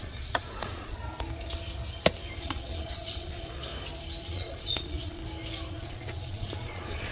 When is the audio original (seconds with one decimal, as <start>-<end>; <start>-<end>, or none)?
1.0-2.4; 3.7-4.2; 5.2-5.7